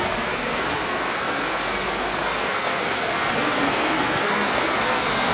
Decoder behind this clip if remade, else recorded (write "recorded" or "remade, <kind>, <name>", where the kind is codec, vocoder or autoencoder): remade, codec, SNAC